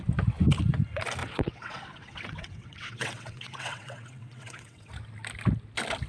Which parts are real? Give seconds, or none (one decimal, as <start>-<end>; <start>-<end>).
0.0-1.2; 4.9-6.1